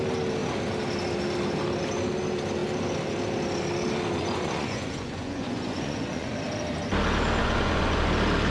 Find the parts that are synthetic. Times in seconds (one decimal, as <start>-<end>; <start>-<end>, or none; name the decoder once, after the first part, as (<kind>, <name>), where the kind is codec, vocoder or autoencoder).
4.2-6.3 (vocoder, Vocos); 7.4-8.1